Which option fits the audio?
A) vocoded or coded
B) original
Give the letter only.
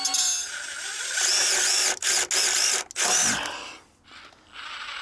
B